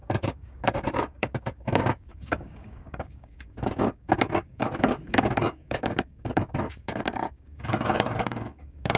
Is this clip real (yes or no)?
no